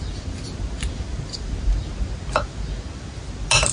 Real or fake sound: real